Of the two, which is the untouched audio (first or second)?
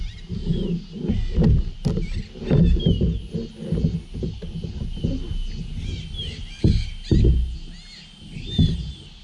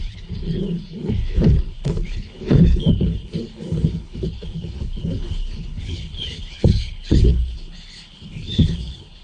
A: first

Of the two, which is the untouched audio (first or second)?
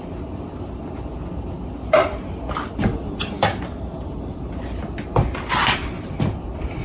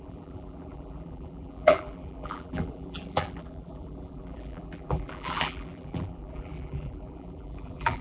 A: first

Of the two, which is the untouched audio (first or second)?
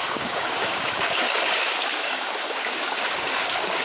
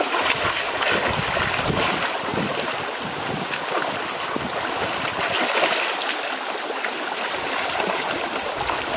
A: second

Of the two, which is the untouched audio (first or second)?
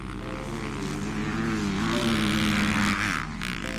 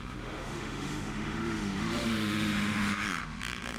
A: first